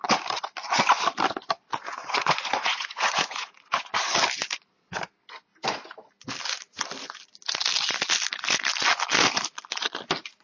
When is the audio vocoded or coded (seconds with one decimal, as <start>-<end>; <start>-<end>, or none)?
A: 1.7-3.9